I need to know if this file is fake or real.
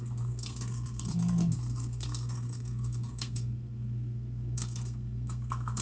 fake